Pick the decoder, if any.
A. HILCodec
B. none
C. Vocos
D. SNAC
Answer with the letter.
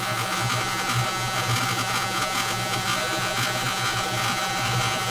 C